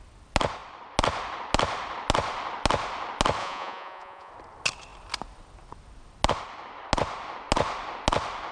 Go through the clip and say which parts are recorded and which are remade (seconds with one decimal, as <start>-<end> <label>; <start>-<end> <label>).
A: 0.0-3.4 recorded; 3.4-4.3 remade; 4.3-8.5 recorded